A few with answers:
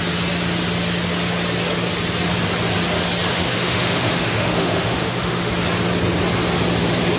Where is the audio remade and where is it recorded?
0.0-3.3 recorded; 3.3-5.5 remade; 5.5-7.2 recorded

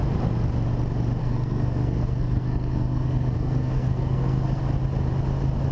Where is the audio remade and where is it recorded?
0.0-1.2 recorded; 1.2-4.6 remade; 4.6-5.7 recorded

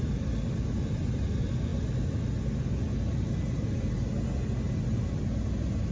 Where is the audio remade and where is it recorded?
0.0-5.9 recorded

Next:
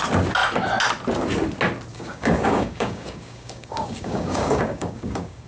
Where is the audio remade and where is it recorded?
0.0-1.9 recorded; 1.9-5.5 remade

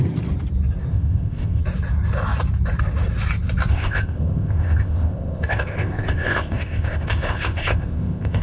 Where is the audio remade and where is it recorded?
0.0-0.9 recorded; 0.9-1.6 remade; 1.6-3.7 recorded; 3.7-8.4 remade

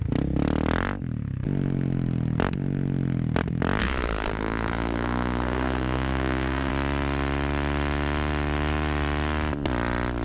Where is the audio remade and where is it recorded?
0.0-3.8 recorded; 3.8-6.7 remade; 6.7-10.2 recorded